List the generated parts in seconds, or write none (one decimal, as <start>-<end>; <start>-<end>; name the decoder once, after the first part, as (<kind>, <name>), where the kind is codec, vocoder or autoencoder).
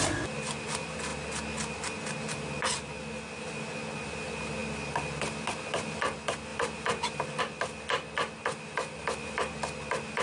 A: none